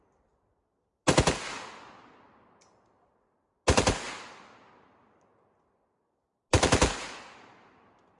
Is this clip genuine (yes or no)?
yes